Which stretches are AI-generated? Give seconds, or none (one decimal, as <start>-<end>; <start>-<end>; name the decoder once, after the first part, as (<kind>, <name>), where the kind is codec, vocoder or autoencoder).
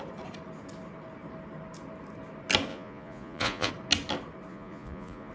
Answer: 2.7-3.7 (vocoder, Vocos); 4.5-5.3